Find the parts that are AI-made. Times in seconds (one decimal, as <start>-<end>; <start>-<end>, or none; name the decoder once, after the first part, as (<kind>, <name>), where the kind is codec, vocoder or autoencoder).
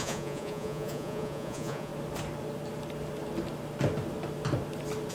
0.0-1.9 (vocoder, Vocos)